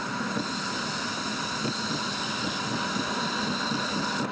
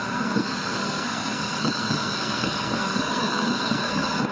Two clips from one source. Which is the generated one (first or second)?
second